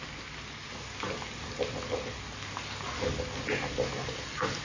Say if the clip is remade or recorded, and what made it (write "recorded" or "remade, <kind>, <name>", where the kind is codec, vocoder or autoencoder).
recorded